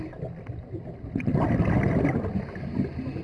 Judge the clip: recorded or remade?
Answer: recorded